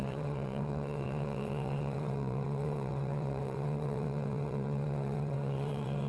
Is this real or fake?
fake